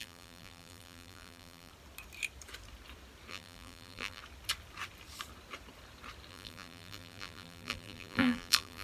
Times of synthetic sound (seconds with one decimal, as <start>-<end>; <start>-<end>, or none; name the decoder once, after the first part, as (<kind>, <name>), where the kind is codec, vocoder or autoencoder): 0.0-1.7 (vocoder, BigVGAN v2); 3.3-4.2; 6.3-8.8

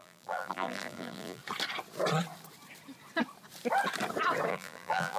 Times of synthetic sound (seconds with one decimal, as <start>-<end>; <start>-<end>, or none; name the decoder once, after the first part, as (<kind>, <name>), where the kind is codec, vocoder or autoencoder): 0.0-1.4 (vocoder, BigVGAN v2); 4.5-5.2